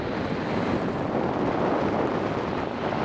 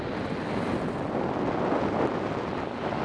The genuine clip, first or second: second